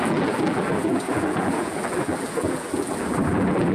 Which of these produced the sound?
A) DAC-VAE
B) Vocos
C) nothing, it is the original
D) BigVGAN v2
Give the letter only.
D